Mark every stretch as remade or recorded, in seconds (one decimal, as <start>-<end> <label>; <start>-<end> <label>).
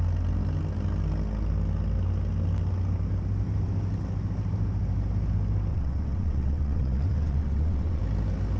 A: 0.0-5.7 recorded; 5.7-8.0 remade; 8.0-8.6 recorded